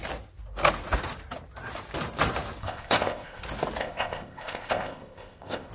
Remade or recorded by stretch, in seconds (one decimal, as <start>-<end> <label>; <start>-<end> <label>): 0.0-2.6 recorded; 2.6-3.4 remade; 3.4-3.8 recorded; 3.8-5.7 remade